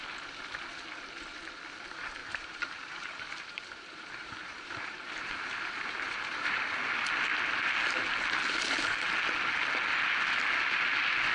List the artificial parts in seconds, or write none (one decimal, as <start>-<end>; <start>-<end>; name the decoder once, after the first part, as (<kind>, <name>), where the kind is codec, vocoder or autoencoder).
2.2-6.9 (vocoder, BigVGAN v2)